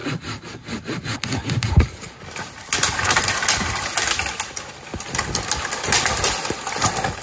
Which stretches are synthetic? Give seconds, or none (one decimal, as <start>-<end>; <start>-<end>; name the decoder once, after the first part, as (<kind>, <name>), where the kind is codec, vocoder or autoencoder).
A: none